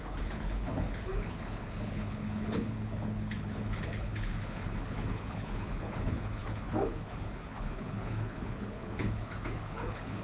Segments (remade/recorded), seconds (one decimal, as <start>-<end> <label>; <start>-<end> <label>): 0.0-10.2 remade